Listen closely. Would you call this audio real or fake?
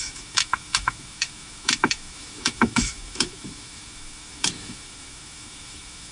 fake